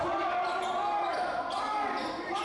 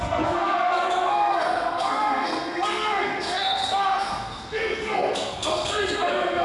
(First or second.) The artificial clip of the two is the second